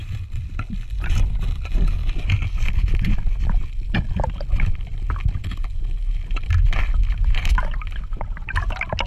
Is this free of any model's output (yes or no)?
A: yes